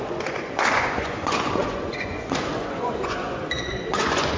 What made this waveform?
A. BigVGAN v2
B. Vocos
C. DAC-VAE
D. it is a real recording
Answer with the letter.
B